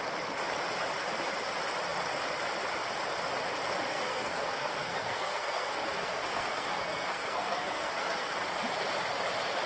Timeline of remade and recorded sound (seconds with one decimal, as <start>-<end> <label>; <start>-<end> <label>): 0.0-3.9 recorded; 3.9-8.3 remade; 8.3-9.7 recorded